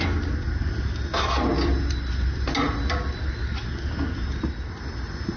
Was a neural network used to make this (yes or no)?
no